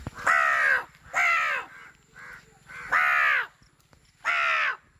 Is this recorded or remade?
recorded